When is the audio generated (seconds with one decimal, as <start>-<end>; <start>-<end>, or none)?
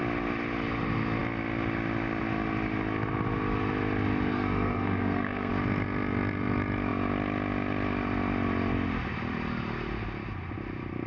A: 4.3-5.5